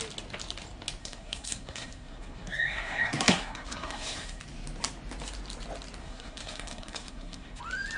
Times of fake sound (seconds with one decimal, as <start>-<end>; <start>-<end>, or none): 1.0-4.4; 6.0-7.6